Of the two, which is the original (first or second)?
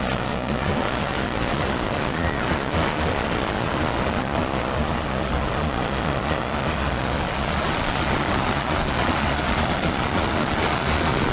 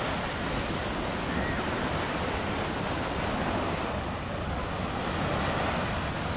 second